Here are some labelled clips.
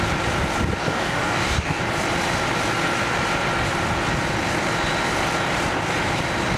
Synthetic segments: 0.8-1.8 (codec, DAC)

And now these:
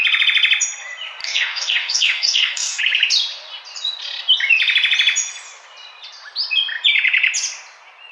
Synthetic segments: 1.2-2.8 (codec, DAC)